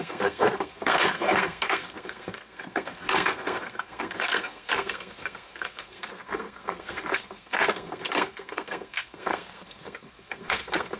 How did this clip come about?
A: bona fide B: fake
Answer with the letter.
B